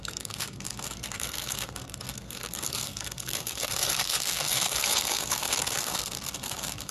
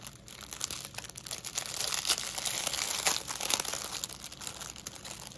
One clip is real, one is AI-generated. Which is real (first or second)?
second